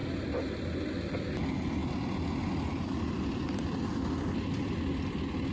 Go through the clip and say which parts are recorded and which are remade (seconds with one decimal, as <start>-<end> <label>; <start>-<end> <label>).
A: 0.0-5.5 recorded

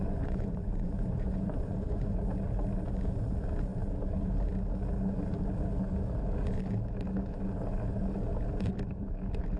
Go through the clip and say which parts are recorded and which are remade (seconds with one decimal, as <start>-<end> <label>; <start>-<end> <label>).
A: 0.0-2.2 remade; 2.2-9.6 recorded

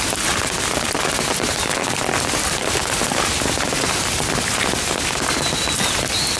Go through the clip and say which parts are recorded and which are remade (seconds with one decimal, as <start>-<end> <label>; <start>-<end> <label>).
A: 0.0-6.4 recorded

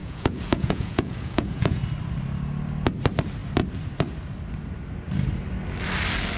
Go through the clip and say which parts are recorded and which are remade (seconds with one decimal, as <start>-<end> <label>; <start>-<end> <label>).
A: 0.0-1.8 remade; 1.8-6.4 recorded

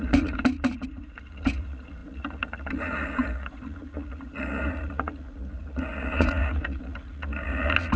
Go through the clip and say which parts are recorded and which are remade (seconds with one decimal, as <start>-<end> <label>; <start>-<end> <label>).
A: 0.0-8.0 remade